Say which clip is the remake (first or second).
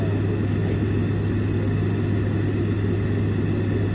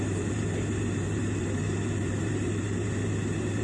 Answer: second